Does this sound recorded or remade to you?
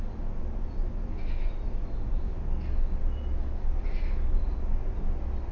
recorded